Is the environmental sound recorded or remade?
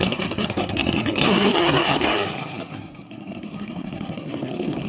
remade